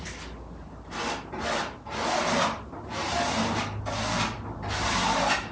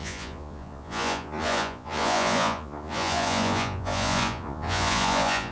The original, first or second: first